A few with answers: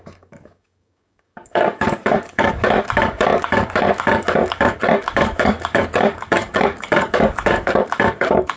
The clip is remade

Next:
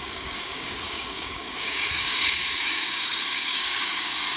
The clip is remade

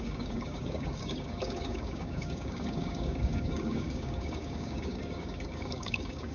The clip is remade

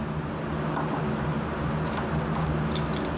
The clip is recorded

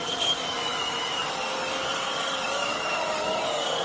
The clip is remade